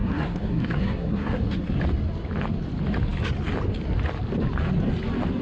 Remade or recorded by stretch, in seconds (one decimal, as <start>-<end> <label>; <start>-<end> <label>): 0.0-1.7 remade; 1.7-5.4 recorded